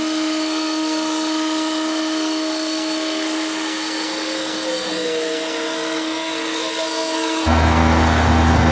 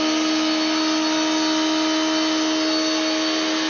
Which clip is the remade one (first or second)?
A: first